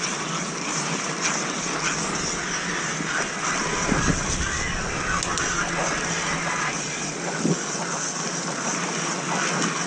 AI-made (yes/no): no